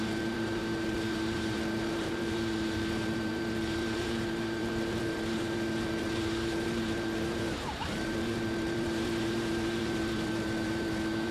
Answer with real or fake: fake